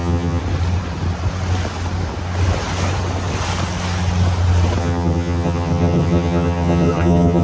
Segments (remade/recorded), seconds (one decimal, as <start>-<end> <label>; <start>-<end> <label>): 0.0-0.4 remade; 0.4-4.8 recorded; 4.8-7.4 remade